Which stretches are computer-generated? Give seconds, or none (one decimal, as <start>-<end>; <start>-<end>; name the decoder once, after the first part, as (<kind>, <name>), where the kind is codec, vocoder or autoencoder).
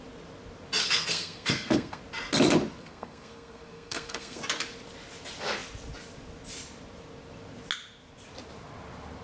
0.8-2.0 (codec, SNAC); 2.8-4.4